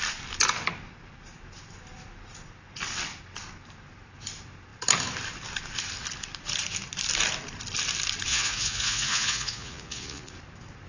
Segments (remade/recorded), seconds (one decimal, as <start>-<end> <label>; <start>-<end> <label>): 0.0-8.3 recorded; 8.3-10.3 remade; 10.3-10.9 recorded